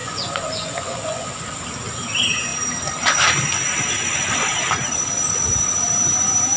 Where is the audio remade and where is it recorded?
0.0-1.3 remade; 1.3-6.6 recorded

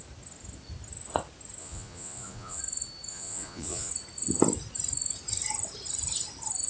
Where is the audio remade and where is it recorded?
0.0-1.6 recorded; 1.6-2.6 remade; 2.6-3.1 recorded; 3.1-3.9 remade; 3.9-6.7 recorded

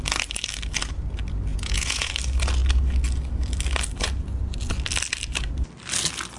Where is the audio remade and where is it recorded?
0.0-1.5 recorded; 1.5-2.1 remade; 2.1-6.4 recorded